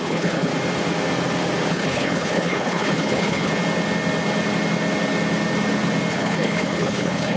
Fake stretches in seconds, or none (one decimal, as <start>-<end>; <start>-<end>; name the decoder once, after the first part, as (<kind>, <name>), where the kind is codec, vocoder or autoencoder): 0.0-0.5 (codec, HILCodec); 1.7-3.5; 6.1-7.4